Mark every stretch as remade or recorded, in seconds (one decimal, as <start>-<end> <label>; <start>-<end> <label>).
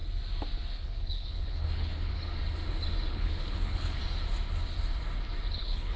0.0-0.7 recorded; 0.7-2.2 remade; 2.2-3.1 recorded; 3.1-4.0 remade; 4.0-5.6 recorded; 5.6-6.0 remade